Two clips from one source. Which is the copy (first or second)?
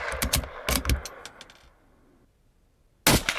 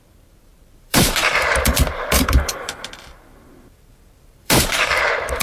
second